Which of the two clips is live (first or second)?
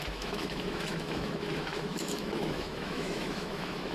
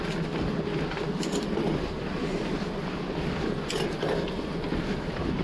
second